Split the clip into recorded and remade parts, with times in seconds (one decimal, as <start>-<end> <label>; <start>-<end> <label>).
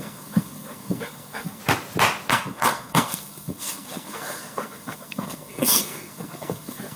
0.0-1.6 remade; 1.6-2.3 recorded; 2.3-7.0 remade